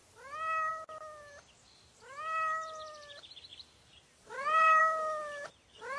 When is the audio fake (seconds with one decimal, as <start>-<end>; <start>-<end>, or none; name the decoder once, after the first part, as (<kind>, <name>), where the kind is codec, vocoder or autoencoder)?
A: 3.5-4.8 (vocoder, BigVGAN v2)